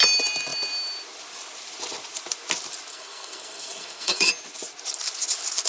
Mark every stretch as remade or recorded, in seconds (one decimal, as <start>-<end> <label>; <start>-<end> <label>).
0.0-2.9 recorded; 2.9-4.3 remade; 4.3-5.7 recorded